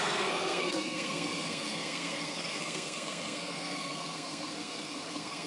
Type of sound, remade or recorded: remade